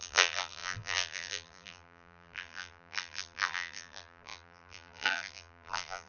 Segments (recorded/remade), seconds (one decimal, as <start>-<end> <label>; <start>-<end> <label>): 0.0-6.1 remade